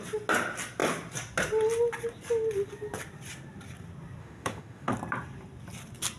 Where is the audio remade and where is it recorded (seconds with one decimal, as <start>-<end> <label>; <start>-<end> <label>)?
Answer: 0.0-4.2 recorded; 4.2-4.9 remade; 4.9-6.2 recorded